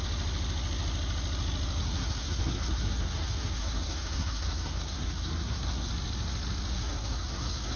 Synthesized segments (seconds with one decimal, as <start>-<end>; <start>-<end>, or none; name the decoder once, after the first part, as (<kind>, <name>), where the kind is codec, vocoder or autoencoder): 1.8-5.9 (codec, SNAC); 6.7-7.8